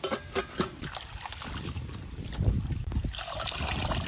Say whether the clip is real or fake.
real